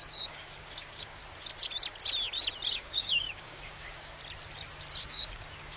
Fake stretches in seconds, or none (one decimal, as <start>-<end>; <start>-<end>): 0.0-1.2; 2.7-4.2; 5.0-5.8